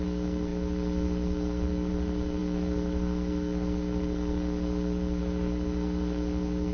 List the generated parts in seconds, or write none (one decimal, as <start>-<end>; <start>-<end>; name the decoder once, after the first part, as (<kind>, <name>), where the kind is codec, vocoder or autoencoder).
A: 0.0-6.7 (codec, SNAC)